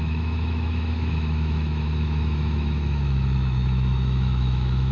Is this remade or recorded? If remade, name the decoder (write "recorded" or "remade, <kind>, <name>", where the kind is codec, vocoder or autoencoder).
remade, autoencoder, DAC-VAE